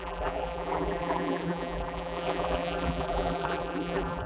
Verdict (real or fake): fake